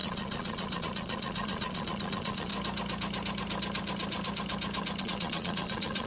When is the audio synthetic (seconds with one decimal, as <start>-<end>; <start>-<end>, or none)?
0.0-2.5; 5.0-6.1